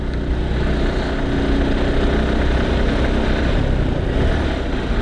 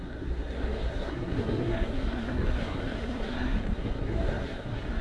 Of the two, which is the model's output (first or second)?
second